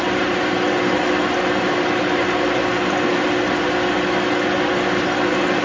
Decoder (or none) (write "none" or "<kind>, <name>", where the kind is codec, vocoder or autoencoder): none